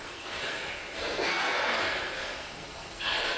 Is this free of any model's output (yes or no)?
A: no